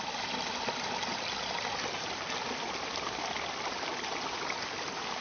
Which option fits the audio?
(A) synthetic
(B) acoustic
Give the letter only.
B